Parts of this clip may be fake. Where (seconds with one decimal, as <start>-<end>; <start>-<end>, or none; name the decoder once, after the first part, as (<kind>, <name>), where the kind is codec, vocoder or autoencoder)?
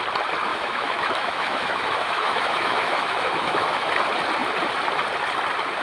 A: 0.5-3.9 (autoencoder, DAC-VAE)